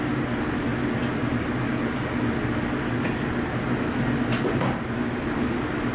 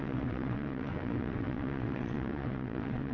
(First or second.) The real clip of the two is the first